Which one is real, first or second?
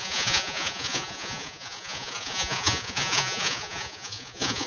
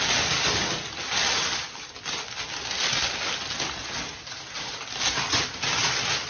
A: second